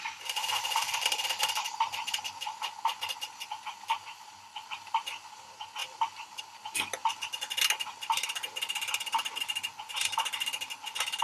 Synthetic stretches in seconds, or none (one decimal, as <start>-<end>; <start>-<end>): none